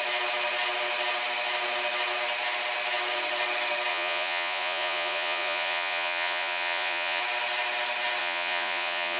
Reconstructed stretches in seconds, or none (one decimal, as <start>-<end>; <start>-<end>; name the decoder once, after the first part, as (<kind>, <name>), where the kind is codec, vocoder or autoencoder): 3.9-7.2 (vocoder, Vocos); 8.2-9.2